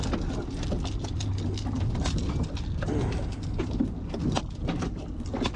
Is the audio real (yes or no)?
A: yes